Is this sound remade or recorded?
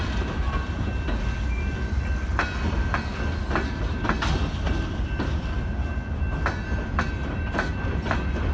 recorded